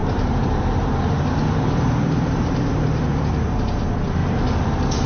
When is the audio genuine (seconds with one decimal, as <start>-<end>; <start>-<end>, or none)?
4.2-5.1